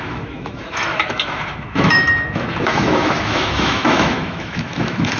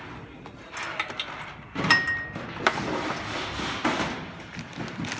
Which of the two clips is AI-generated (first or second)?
first